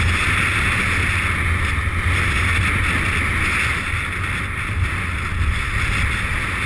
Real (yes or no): yes